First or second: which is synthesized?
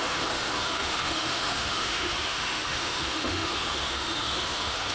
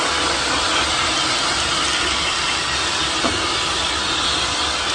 first